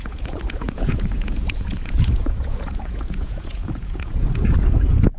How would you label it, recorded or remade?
remade